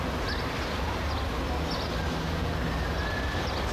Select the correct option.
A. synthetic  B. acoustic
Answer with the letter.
B